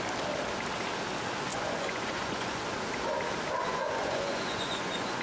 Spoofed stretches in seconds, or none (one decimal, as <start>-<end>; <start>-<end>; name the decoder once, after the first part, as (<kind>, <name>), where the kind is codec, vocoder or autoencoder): 1.5-2.6 (vocoder, Vocos); 3.6-5.2